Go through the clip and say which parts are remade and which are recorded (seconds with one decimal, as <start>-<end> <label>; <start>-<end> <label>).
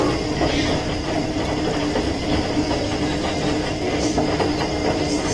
0.0-0.5 recorded; 0.5-2.2 remade; 2.2-5.3 recorded